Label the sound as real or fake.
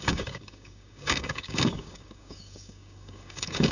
fake